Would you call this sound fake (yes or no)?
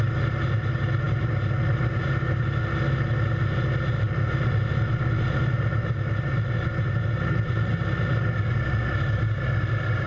no